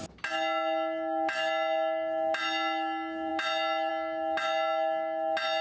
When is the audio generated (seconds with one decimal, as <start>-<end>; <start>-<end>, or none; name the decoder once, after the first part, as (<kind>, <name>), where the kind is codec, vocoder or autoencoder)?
none